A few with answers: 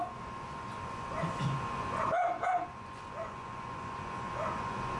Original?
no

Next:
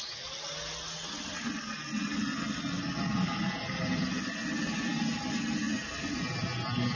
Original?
yes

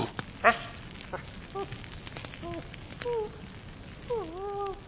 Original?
yes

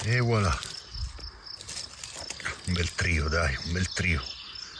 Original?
yes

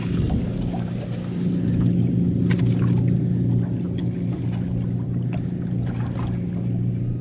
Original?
yes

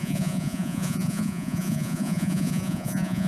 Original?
no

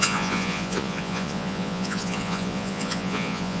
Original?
no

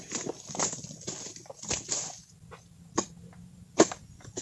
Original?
yes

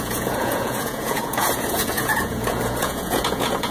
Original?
no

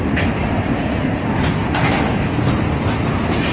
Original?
yes